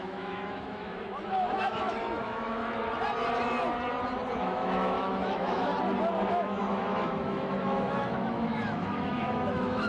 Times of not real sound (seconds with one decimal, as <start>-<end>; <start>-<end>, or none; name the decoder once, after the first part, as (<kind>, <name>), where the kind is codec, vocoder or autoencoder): 0.0-2.6 (autoencoder, DAC-VAE); 4.4-5.7; 6.3-9.9